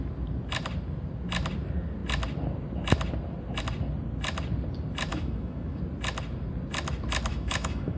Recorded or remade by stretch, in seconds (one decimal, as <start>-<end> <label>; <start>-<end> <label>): 0.0-5.1 recorded; 5.1-5.8 remade; 5.8-7.3 recorded; 7.3-8.0 remade